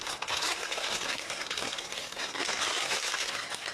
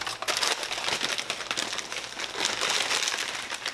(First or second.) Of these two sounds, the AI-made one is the first